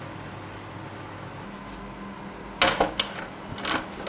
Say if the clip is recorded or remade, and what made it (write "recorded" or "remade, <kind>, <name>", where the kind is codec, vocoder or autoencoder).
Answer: recorded